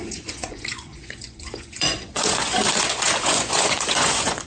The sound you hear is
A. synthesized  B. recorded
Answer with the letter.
A